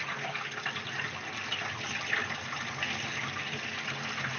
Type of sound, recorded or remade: recorded